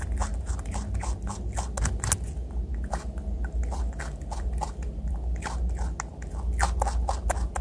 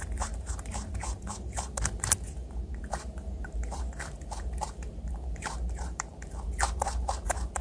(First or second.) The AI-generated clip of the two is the second